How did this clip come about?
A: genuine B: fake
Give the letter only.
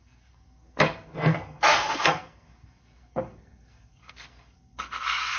B